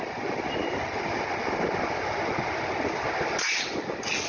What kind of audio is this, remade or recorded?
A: recorded